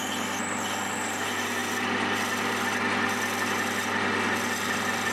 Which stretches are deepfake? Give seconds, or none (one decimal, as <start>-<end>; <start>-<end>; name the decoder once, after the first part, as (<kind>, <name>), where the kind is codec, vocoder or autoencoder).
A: none